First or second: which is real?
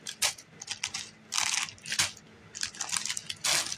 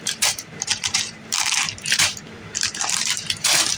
first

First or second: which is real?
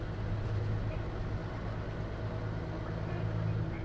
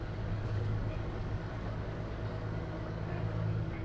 first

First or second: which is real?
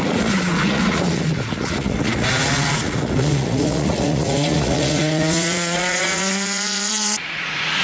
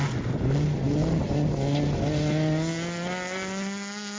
second